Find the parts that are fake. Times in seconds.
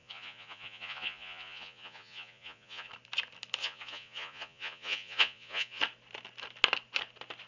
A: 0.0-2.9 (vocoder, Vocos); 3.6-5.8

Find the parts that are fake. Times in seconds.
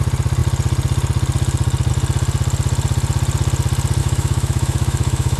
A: 4.0-5.4 (autoencoder, DAC-VAE)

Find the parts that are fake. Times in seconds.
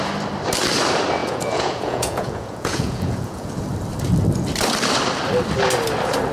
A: 1.2-3.5 (vocoder, Vocos)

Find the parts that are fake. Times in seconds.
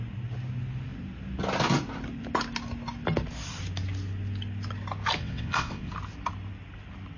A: 5.2-5.9 (vocoder, WaveNeXt)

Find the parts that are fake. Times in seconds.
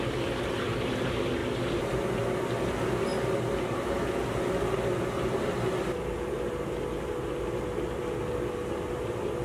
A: none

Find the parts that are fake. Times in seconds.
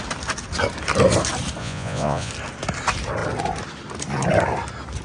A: 1.6-2.3 (vocoder, Vocos)